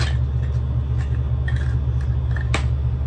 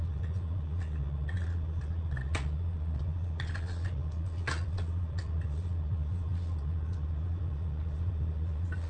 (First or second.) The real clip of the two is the first